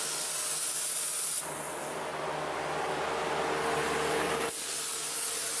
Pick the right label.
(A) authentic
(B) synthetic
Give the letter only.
A